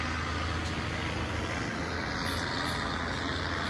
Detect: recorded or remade recorded